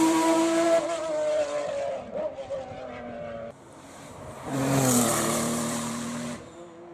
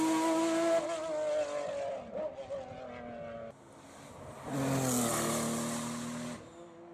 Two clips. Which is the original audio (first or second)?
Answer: second